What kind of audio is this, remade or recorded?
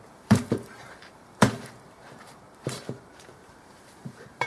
remade